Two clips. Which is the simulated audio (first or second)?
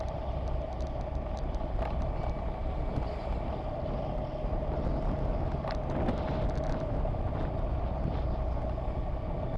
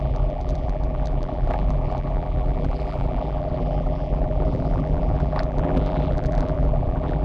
second